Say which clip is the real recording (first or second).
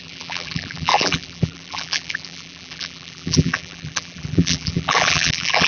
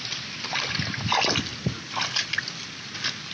second